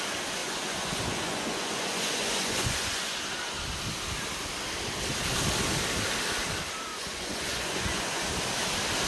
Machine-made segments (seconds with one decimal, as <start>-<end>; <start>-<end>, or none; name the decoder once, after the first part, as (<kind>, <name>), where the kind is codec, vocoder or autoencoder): 0.4-3.2 (vocoder, Vocos); 6.9-8.3